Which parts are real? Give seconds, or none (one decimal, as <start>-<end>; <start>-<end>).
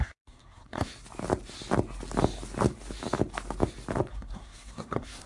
0.9-4.1